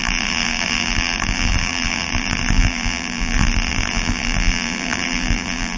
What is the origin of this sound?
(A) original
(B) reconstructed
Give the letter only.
B